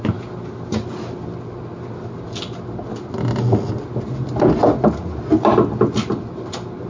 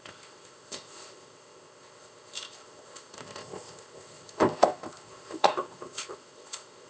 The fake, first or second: second